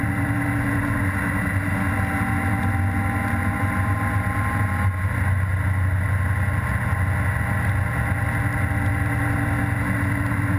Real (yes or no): yes